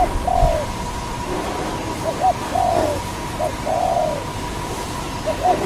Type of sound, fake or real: real